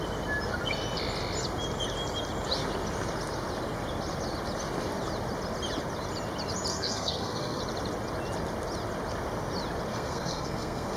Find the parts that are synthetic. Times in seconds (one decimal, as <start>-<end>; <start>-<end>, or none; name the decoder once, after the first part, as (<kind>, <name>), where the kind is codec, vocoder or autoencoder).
6.7-7.6 (codec, SNAC); 9.9-11.0